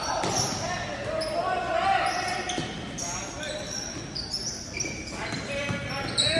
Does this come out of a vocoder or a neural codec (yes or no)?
no